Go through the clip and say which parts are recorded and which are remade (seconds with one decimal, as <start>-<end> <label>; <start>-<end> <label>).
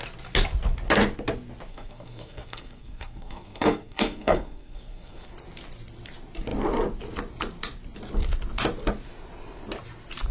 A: 0.0-1.7 recorded; 1.7-5.3 remade; 5.3-10.3 recorded